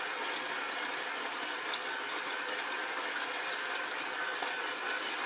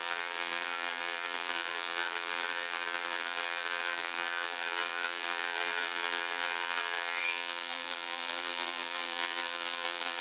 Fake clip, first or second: second